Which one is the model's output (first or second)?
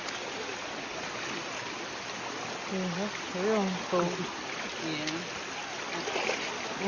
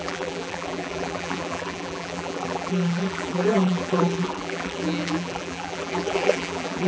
second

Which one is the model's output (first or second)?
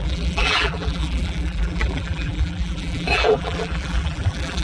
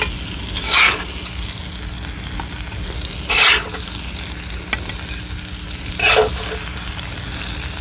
first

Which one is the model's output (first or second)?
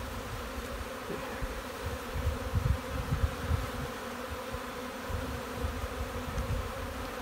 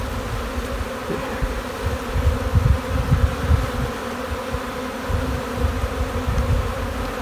first